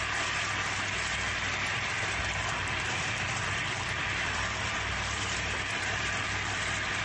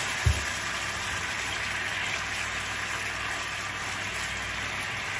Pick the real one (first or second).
second